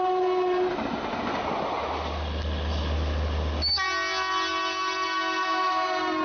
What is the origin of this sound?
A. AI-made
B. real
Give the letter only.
B